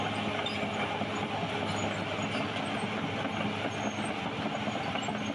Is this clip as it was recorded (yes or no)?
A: yes